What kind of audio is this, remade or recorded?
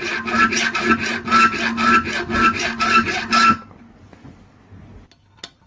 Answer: recorded